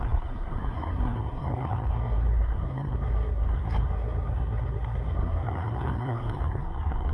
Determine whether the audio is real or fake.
fake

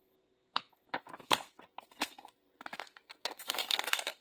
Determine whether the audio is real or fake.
fake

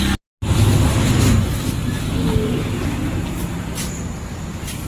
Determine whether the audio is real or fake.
real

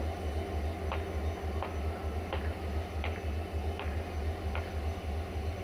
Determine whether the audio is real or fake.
real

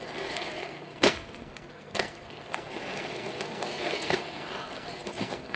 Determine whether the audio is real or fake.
fake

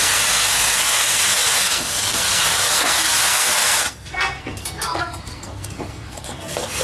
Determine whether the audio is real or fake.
fake